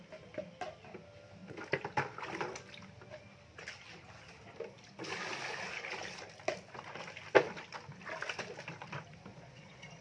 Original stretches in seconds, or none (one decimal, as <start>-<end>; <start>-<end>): 0.0-9.3